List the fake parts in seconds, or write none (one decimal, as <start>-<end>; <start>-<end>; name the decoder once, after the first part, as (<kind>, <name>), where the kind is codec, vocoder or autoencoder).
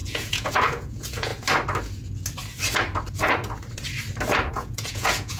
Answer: 0.0-1.3 (vocoder, Vocos); 4.5-5.4